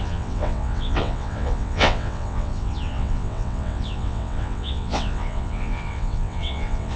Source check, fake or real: fake